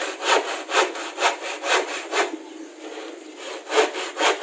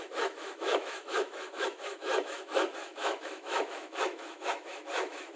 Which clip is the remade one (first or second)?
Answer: second